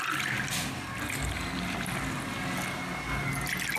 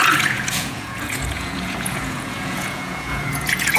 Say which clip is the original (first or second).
first